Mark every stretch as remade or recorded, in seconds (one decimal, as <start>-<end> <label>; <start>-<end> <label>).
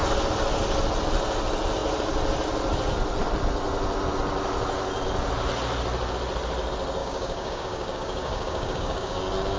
0.0-7.0 recorded; 7.0-9.2 remade; 9.2-9.6 recorded